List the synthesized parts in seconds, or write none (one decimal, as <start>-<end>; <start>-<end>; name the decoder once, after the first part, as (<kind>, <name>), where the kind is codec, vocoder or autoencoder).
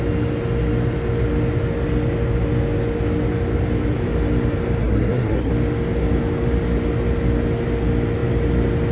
4.8-5.5 (codec, SNAC)